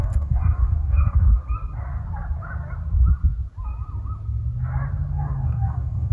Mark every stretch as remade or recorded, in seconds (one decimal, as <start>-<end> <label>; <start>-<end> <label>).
0.0-1.4 remade; 1.4-5.1 recorded; 5.1-6.1 remade